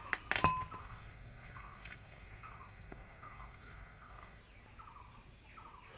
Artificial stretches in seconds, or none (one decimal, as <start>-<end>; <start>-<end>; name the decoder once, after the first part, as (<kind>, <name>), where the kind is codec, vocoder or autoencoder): 0.8-4.4 (codec, SNAC)